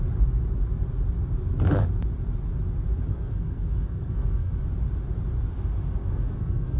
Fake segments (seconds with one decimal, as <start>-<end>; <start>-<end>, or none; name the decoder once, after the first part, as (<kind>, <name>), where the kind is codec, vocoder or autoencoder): 3.1-4.6 (codec, SNAC); 6.0-6.8